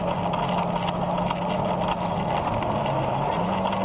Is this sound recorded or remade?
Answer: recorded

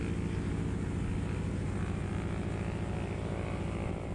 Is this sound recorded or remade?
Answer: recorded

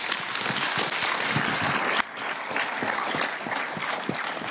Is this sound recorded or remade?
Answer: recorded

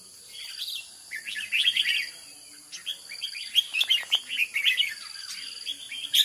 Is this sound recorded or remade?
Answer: recorded